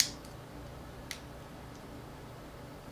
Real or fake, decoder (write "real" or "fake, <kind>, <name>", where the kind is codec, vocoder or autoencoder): real